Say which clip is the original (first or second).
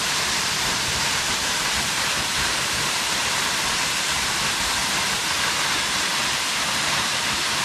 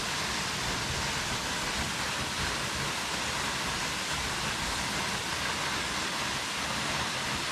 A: second